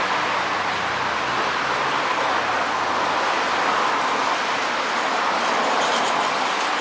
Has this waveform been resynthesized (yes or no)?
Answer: no